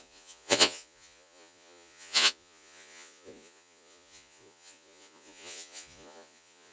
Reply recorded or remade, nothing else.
remade